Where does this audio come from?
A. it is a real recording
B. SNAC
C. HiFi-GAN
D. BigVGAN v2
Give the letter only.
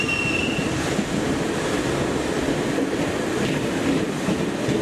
A